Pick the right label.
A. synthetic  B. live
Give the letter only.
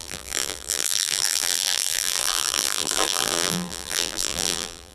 A